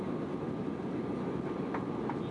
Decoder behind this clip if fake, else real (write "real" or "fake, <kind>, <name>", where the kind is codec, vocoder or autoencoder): real